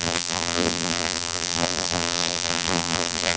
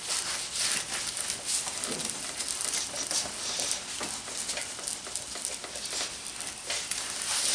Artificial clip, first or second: first